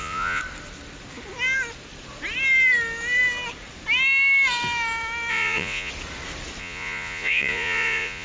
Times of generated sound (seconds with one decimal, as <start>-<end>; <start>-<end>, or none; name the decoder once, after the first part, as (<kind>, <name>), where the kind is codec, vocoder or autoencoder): 0.0-0.4 (vocoder, Vocos); 5.3-5.9; 6.6-8.2